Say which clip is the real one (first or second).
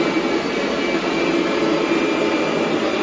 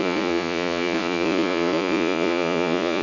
first